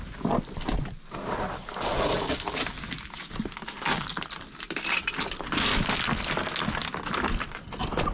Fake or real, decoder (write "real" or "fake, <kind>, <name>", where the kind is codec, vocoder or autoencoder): real